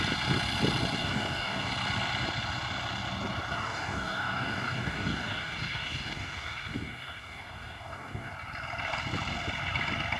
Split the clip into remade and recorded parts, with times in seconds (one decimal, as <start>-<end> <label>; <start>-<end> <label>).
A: 0.0-1.0 recorded; 1.0-1.7 remade; 1.7-3.5 recorded; 3.5-8.3 remade; 8.3-10.2 recorded